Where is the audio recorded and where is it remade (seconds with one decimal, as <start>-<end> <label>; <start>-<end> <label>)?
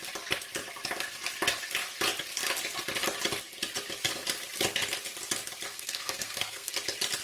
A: 0.0-5.7 recorded; 5.7-6.7 remade; 6.7-7.2 recorded